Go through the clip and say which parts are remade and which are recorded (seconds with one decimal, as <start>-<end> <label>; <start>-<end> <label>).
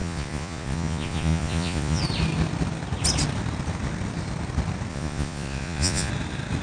0.0-2.0 remade; 2.0-4.9 recorded; 4.9-6.1 remade; 6.1-6.6 recorded